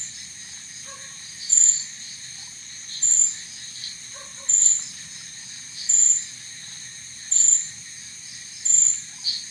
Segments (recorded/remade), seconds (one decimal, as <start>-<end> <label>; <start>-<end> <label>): 0.0-1.5 recorded; 1.5-2.1 remade; 2.1-2.6 recorded; 2.6-3.2 remade; 3.2-9.5 recorded